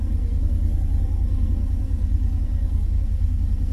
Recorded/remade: remade